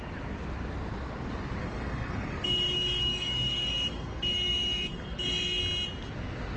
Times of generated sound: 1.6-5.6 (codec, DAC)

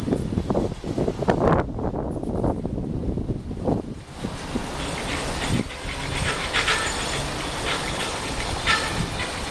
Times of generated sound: 7.7-8.6 (codec, HILCodec)

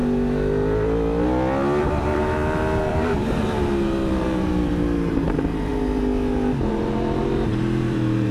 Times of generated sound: 1.8-5.7 (vocoder, BigVGAN v2); 6.7-8.3

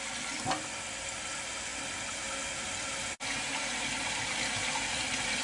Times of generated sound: none

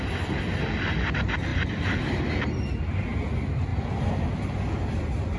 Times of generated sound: 1.5-2.1 (vocoder, BigVGAN v2)

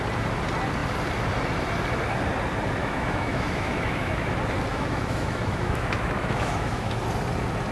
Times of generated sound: 2.8-4.3 (autoencoder, DAC-VAE); 4.7-7.0